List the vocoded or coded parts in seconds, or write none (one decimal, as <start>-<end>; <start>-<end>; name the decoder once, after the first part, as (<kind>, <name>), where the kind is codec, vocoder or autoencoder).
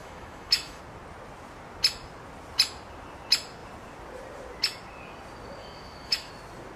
0.0-0.8 (autoencoder, DAC-VAE); 5.6-6.3